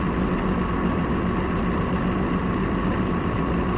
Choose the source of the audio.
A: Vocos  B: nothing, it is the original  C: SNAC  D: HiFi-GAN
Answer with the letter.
B